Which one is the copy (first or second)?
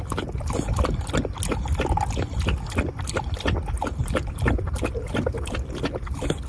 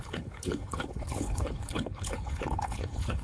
second